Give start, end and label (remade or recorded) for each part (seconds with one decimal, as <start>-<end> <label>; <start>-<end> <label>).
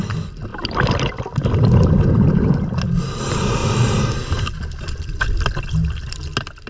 0.0-6.7 recorded